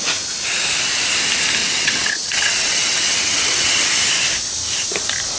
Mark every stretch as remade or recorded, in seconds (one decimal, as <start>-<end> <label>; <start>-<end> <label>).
0.0-1.6 recorded; 1.6-3.9 remade; 3.9-5.4 recorded